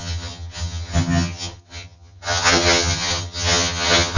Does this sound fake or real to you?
fake